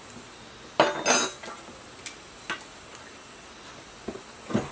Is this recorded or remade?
recorded